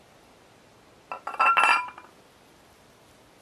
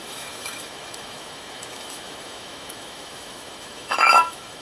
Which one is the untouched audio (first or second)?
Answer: first